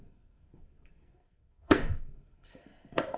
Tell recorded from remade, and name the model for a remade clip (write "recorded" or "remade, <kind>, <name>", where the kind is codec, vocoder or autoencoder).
remade, codec, SNAC